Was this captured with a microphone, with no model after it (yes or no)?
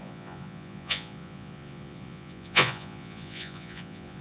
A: no